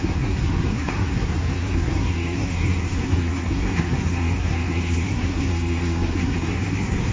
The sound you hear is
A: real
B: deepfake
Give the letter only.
B